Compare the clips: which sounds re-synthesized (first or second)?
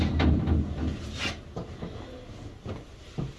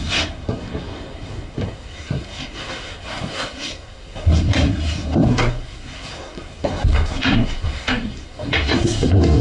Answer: second